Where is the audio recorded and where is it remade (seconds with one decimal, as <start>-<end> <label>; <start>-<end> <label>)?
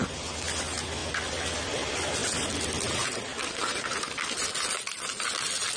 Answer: 0.0-5.8 recorded